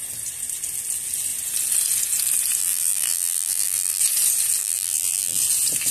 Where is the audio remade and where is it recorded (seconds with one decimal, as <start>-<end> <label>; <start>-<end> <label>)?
0.0-2.6 recorded; 2.6-4.0 remade; 4.0-4.6 recorded; 4.6-5.4 remade; 5.4-5.9 recorded

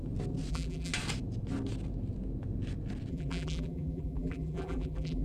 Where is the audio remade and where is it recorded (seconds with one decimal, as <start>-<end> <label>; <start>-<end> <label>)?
0.0-0.5 recorded; 0.5-0.9 remade; 0.9-3.1 recorded; 3.1-5.2 remade

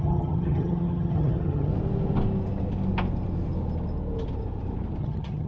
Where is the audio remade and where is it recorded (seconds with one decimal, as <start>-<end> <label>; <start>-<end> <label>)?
0.0-1.7 remade; 1.7-5.0 recorded; 5.0-5.5 remade

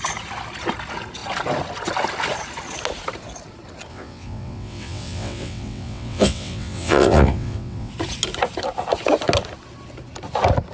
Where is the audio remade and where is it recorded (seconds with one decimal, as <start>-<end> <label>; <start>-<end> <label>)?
0.0-3.9 recorded; 3.9-7.9 remade; 7.9-10.7 recorded

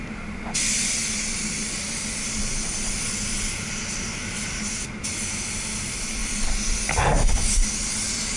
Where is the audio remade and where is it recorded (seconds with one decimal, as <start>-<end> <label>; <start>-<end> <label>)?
0.0-8.4 recorded

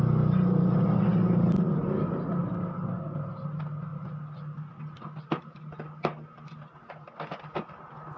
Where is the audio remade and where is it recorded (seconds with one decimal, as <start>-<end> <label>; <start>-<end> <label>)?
0.0-8.2 recorded

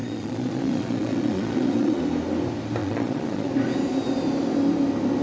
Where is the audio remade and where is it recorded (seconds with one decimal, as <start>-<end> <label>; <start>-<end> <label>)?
0.0-2.0 remade; 2.0-2.8 recorded; 2.8-3.5 remade; 3.5-5.2 recorded